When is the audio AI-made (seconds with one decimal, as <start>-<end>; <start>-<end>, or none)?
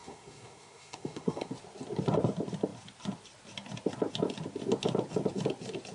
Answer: 0.0-1.5